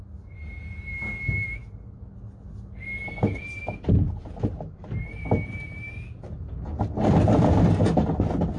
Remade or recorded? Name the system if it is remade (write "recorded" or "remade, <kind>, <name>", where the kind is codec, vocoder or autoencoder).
recorded